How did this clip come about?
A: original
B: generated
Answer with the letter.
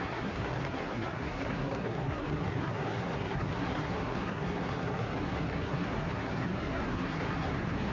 B